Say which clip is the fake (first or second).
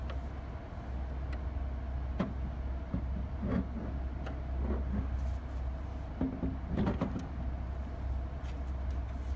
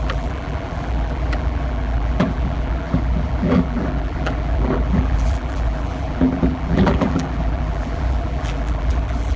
second